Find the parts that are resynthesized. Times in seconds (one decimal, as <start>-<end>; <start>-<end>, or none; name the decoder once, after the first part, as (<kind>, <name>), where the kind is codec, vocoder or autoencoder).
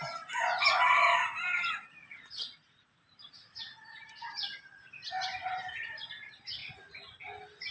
2.0-3.6 (vocoder, Vocos)